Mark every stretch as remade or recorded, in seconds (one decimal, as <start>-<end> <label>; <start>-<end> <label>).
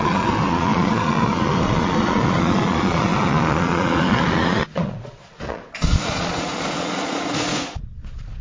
0.0-8.4 remade